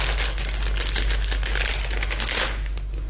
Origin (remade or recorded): recorded